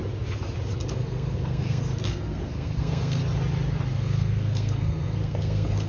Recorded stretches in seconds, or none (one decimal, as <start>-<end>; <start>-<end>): 0.0-0.9; 3.2-3.9